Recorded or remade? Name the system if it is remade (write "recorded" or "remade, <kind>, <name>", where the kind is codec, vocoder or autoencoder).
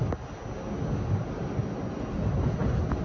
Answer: recorded